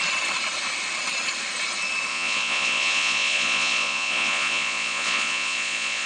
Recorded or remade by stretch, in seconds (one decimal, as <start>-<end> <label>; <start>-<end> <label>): 0.0-2.1 recorded; 2.1-6.1 remade